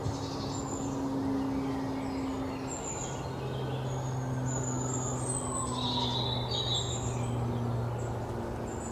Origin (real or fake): real